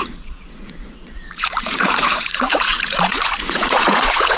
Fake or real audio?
fake